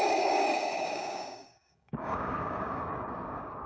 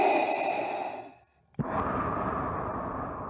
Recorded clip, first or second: second